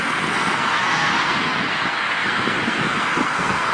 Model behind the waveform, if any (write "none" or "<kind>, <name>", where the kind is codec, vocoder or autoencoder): codec, SNAC